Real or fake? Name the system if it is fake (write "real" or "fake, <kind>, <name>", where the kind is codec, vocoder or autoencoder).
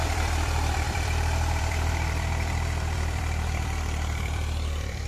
fake, vocoder, BigVGAN v2